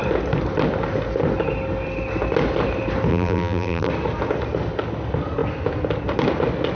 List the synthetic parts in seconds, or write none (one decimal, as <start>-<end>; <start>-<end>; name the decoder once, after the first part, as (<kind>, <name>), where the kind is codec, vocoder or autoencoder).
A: 3.1-3.9 (vocoder, BigVGAN v2)